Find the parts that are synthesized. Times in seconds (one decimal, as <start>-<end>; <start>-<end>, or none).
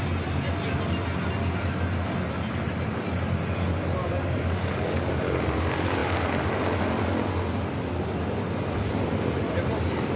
4.0-5.1